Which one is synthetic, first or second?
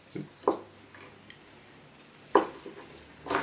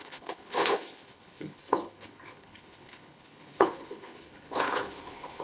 second